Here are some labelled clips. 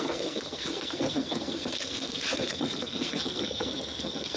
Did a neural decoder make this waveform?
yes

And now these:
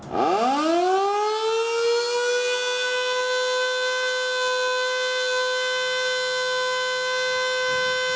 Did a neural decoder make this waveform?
no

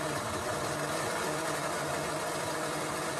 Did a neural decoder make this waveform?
no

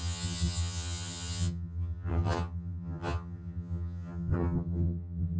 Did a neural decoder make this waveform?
yes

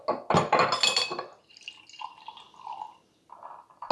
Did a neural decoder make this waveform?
no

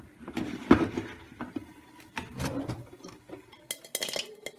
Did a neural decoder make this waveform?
no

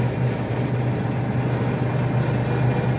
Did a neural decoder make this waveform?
no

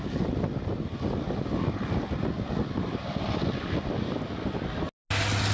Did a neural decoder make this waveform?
no